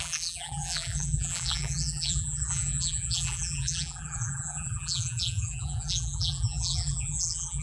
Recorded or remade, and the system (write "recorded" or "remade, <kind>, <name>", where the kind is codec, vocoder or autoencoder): remade, vocoder, BigVGAN v2